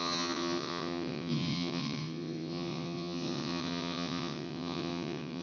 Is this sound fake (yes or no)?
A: yes